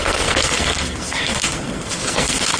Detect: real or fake fake